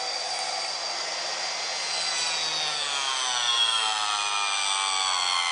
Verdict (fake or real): real